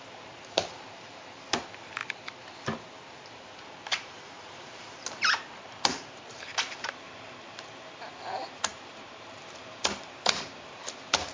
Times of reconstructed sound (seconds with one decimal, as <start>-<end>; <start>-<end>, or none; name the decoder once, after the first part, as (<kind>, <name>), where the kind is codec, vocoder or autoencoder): 0.0-2.0 (vocoder, BigVGAN v2); 3.3-11.3